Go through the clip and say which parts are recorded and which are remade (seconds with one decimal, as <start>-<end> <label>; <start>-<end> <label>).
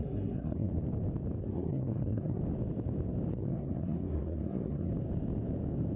0.0-0.7 remade; 0.7-1.4 recorded; 1.4-2.4 remade; 2.4-3.3 recorded; 3.3-4.9 remade; 4.9-6.0 recorded